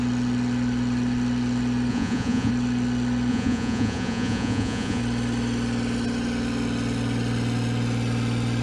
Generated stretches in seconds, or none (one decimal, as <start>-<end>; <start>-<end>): 1.9-2.5; 3.3-5.0